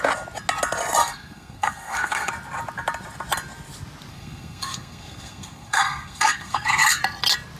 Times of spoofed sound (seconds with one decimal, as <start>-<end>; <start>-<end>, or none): 1.0-2.3; 4.1-7.0